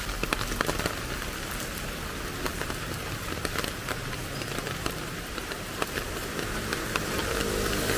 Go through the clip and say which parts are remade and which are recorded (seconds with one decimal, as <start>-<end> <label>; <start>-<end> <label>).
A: 0.0-2.5 recorded; 2.5-7.3 remade; 7.3-8.0 recorded